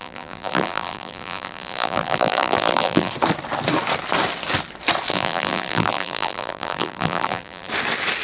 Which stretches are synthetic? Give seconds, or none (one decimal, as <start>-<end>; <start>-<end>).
0.0-3.1; 5.1-7.7